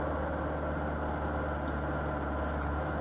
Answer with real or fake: real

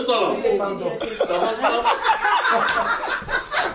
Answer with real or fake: real